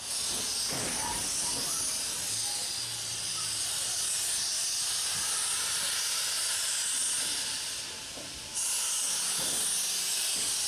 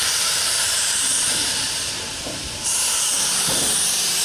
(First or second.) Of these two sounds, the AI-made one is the second